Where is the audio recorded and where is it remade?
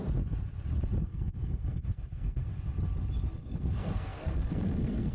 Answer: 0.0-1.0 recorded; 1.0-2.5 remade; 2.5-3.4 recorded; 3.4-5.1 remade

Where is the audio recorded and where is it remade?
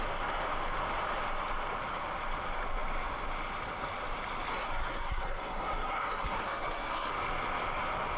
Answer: 0.0-4.5 recorded; 4.5-7.1 remade; 7.1-8.2 recorded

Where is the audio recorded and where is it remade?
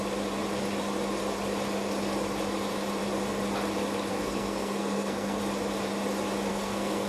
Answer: 0.0-4.1 recorded; 4.1-5.4 remade; 5.4-6.5 recorded; 6.5-7.1 remade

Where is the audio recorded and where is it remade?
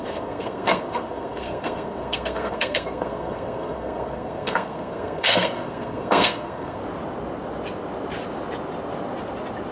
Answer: 0.0-6.8 remade; 6.8-9.7 recorded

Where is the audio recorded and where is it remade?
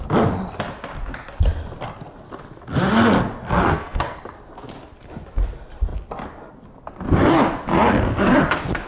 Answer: 0.0-3.6 recorded; 3.6-4.2 remade; 4.2-8.9 recorded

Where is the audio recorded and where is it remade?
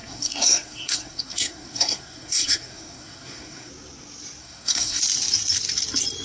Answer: 0.0-3.7 remade; 3.7-4.4 recorded; 4.4-5.0 remade; 5.0-6.2 recorded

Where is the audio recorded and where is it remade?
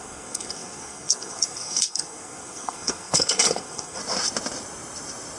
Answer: 0.0-4.0 remade; 4.0-5.4 recorded